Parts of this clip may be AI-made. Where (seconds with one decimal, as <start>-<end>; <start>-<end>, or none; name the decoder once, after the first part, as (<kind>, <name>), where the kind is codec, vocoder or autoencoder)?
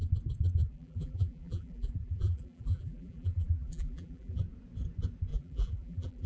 0.6-4.4 (vocoder, BigVGAN v2); 5.3-6.3